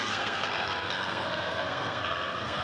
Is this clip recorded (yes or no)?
no